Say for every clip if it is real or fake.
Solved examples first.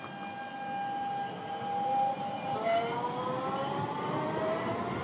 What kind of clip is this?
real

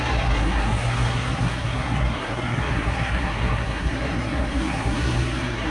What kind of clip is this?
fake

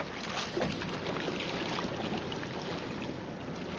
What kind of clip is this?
real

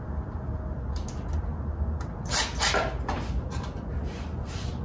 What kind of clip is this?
real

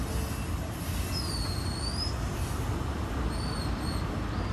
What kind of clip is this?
real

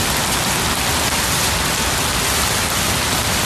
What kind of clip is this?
real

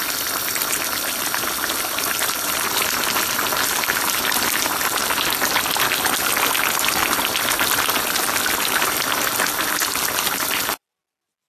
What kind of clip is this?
real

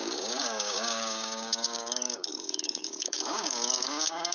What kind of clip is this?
fake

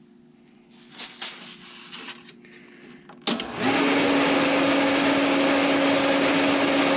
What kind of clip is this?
real